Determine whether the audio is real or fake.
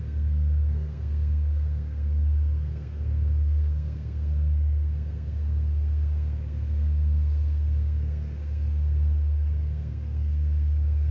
fake